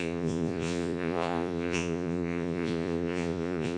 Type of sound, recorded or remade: remade